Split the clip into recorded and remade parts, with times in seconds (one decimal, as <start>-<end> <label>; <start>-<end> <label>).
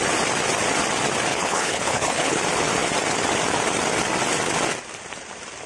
0.0-1.3 recorded; 1.3-2.4 remade; 2.4-5.7 recorded